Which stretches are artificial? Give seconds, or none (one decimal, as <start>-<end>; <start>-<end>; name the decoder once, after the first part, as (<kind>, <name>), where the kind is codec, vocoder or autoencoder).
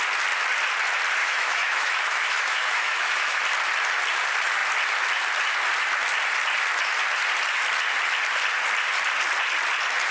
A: 1.2-3.4 (autoencoder, DAC-VAE)